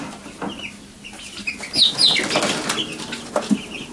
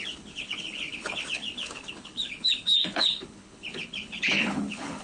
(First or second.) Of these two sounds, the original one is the first